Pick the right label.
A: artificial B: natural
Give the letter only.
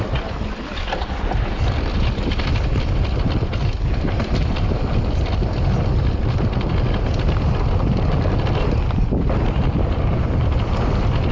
B